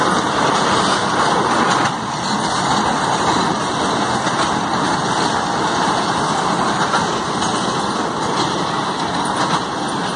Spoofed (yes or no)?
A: no